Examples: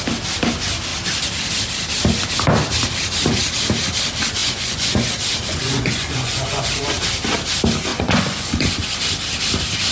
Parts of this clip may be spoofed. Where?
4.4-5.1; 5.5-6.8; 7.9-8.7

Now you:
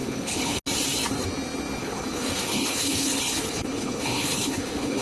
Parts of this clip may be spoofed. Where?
0.0-0.6; 1.8-5.0

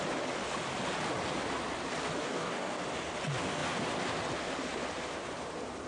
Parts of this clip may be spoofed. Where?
2.2-2.8

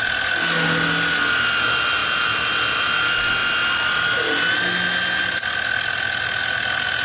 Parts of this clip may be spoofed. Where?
none

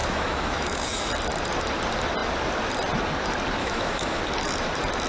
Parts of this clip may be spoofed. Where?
0.0-1.1; 3.6-4.2

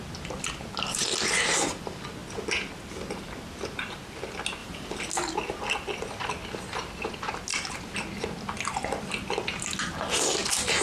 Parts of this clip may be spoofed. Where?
4.6-5.1

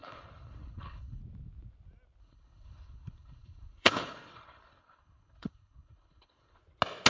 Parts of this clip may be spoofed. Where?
0.0-1.2; 2.2-6.6